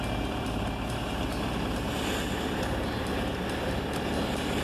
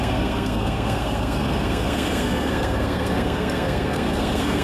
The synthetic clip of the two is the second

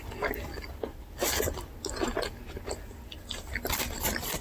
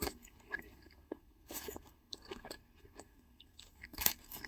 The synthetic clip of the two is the second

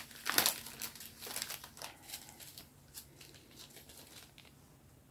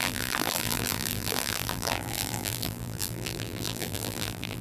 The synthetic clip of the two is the second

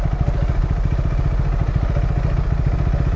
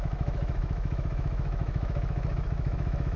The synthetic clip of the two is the second